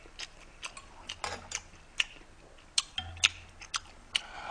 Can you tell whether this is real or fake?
real